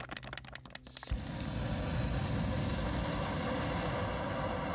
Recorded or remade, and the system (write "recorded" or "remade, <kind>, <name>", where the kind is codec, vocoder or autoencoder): recorded